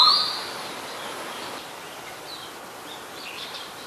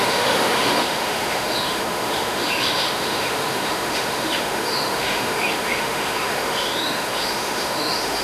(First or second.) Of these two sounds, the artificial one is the second